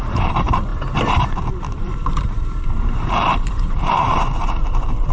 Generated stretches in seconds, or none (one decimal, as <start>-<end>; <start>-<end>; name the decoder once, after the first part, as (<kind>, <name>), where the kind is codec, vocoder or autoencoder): 0.0-5.1 (vocoder, BigVGAN v2)